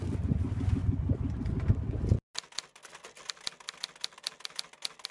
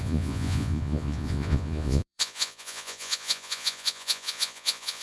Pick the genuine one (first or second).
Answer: first